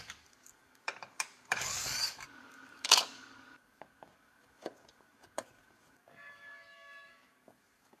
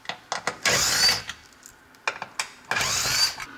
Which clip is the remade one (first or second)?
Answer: first